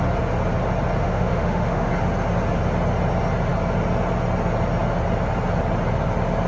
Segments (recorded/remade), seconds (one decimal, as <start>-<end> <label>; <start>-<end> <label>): 0.0-1.0 recorded; 1.0-1.9 remade; 1.9-6.5 recorded